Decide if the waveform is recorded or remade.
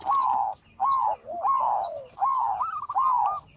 recorded